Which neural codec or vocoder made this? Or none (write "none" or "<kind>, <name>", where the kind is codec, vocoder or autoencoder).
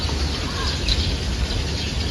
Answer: none